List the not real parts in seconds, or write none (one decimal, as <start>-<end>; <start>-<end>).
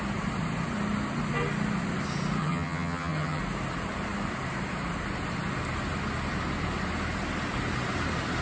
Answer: 2.4-3.4